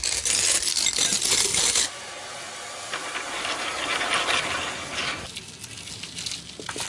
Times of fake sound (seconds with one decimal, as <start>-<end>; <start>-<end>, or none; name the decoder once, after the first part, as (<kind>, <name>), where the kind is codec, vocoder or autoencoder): none

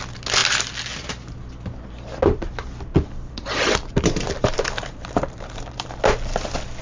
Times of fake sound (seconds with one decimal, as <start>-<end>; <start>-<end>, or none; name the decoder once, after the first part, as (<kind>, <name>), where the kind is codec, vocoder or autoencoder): 2.9-6.0 (vocoder, BigVGAN v2)

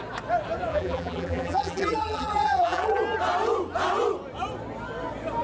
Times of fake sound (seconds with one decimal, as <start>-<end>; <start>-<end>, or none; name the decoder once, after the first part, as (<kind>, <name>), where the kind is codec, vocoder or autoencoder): 0.7-3.0 (vocoder, BigVGAN v2)